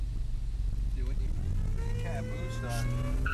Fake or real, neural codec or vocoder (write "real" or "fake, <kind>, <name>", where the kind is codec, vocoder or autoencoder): real